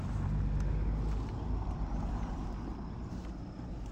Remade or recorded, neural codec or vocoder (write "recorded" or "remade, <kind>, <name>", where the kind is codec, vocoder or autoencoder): recorded